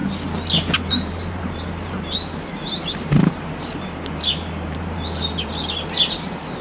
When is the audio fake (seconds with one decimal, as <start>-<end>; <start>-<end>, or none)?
0.9-6.6